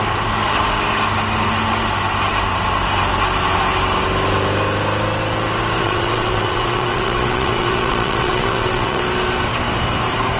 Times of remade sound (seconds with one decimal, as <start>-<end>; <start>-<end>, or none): 5.8-9.0